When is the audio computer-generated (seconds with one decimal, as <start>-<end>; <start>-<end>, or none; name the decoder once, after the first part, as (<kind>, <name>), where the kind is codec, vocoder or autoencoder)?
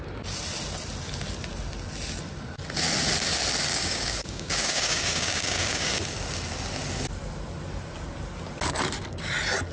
3.7-6.0 (codec, DAC)